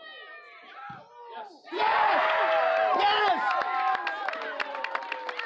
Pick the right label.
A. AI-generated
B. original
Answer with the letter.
B